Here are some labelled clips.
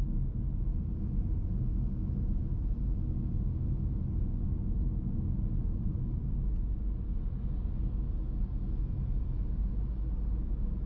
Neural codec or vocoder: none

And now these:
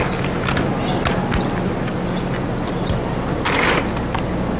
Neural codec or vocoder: none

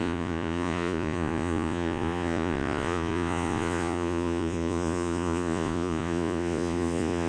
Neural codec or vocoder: vocoder, Vocos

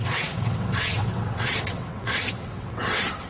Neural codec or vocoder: vocoder, WaveNeXt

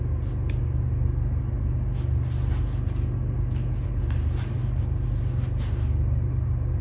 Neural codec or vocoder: none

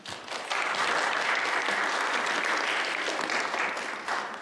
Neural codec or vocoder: vocoder, BigVGAN v2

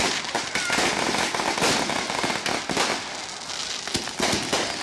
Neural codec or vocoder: none